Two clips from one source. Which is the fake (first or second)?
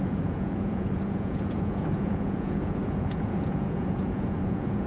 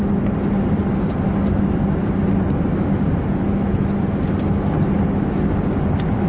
first